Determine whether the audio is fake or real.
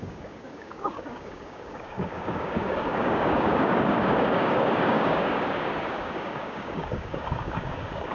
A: fake